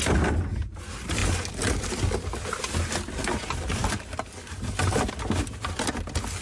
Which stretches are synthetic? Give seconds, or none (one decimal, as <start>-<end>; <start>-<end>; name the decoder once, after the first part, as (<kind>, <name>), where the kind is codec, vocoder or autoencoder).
none